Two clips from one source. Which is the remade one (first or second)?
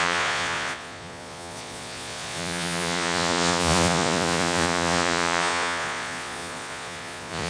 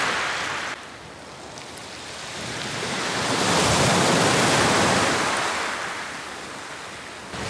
first